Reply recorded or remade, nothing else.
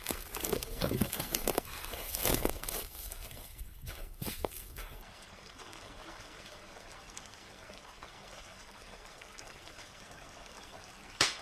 remade